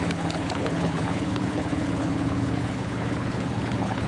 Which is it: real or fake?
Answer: fake